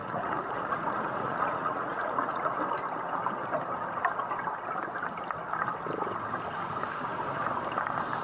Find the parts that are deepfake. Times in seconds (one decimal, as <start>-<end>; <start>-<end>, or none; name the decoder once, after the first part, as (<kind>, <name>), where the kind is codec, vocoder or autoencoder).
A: 0.0-2.6 (vocoder, Vocos)